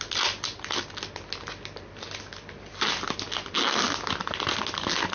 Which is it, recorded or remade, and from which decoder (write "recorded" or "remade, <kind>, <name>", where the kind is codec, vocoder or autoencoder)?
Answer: recorded